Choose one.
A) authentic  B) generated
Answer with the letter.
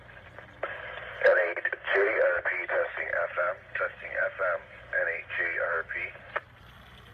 B